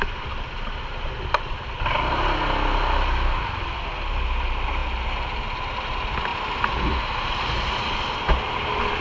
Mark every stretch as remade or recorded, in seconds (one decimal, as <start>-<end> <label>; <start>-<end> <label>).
0.0-9.0 recorded